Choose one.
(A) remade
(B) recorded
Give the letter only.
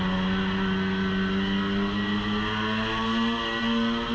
B